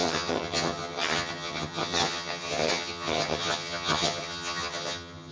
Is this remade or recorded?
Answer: remade